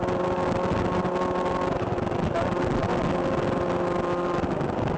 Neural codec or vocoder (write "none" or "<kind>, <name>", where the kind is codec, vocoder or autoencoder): none